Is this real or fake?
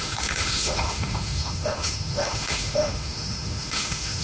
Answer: fake